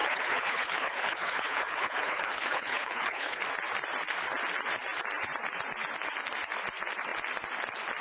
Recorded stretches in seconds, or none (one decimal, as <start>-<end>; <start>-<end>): 3.4-8.0